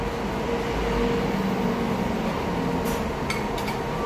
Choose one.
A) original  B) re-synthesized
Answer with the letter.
A